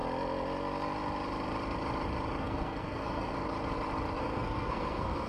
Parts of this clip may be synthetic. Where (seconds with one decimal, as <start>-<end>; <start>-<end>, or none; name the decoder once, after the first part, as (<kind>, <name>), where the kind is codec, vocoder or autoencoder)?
2.4-3.3 (codec, SNAC); 4.2-5.3